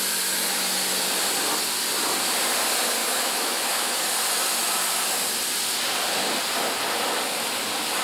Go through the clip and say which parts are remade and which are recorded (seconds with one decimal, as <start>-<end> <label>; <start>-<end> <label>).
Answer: 0.0-3.0 recorded; 3.0-3.9 remade; 3.9-8.0 recorded